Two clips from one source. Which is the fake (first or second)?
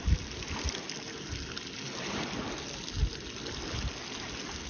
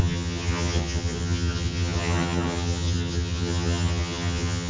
second